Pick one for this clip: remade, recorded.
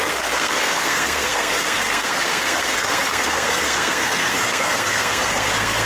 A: remade